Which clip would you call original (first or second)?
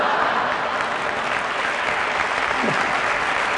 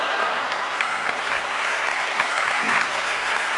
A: first